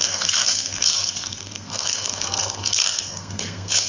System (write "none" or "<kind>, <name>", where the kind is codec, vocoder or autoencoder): codec, SNAC